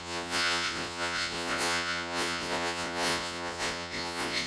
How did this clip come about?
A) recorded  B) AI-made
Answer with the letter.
B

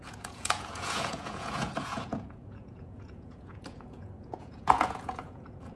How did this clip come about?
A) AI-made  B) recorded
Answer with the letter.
A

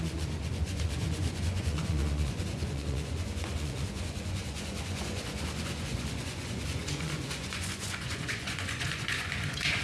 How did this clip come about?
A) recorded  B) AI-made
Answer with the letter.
B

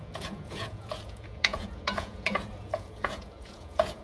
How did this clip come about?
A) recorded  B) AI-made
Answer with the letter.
B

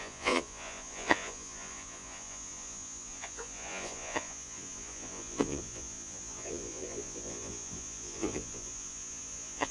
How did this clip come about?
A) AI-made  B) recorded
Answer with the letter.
A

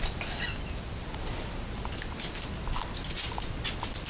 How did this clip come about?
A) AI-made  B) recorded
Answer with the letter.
B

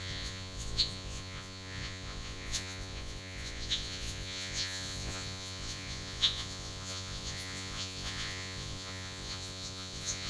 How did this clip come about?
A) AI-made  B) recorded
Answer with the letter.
A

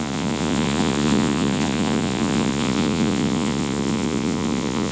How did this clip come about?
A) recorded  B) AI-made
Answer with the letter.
B